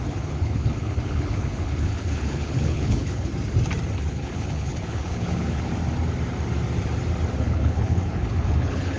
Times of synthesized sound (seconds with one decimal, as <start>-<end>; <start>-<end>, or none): 0.0-3.3; 4.1-5.7; 7.4-9.0